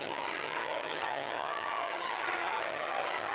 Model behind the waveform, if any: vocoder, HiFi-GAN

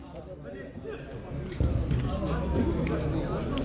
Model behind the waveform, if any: none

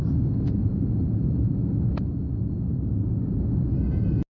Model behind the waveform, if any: none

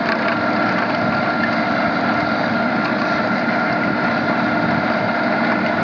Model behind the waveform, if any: none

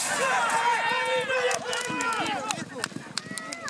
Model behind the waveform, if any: none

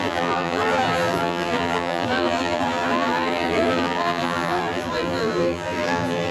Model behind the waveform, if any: vocoder, BigVGAN v2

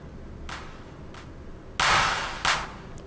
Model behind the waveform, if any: none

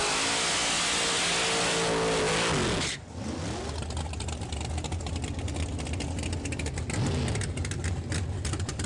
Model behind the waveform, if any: none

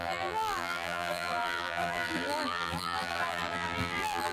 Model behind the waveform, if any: vocoder, BigVGAN v2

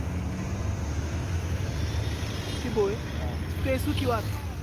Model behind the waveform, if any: none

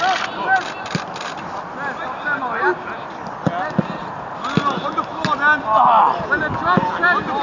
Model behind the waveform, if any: none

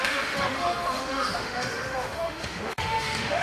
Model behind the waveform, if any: autoencoder, DAC-VAE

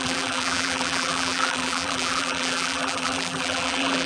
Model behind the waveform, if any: vocoder, BigVGAN v2